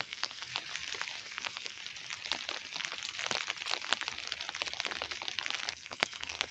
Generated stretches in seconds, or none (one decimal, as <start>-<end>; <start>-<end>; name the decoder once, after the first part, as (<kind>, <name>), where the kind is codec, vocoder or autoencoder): 0.0-0.5 (codec, SNAC); 1.2-1.8; 5.7-6.5